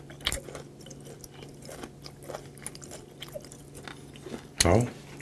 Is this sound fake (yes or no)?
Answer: no